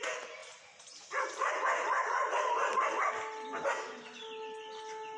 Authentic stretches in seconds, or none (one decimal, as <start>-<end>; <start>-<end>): 0.0-5.2